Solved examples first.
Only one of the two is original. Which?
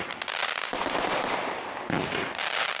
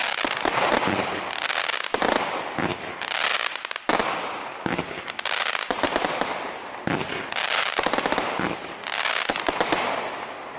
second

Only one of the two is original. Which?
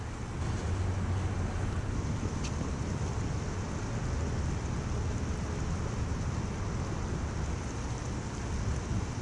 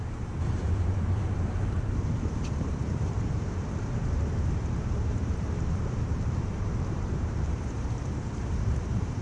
first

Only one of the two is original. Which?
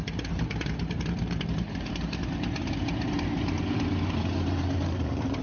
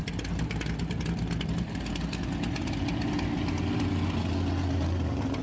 second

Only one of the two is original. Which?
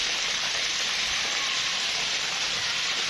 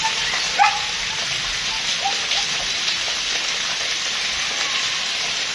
second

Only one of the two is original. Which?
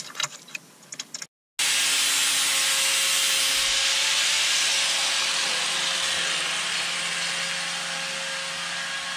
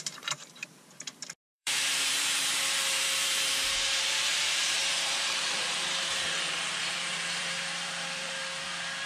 first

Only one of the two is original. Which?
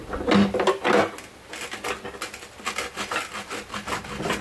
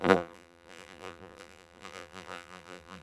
first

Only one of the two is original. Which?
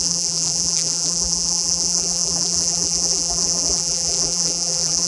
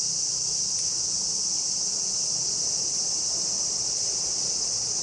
second